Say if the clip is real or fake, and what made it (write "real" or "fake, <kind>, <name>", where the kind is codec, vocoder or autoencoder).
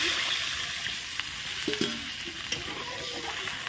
real